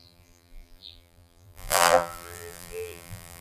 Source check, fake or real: fake